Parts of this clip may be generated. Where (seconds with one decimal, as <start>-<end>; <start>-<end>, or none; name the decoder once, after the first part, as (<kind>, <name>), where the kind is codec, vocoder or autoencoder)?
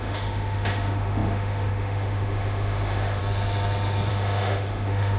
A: 0.0-3.2 (autoencoder, DAC-VAE); 4.1-5.2